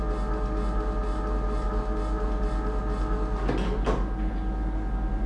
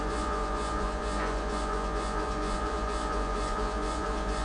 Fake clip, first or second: second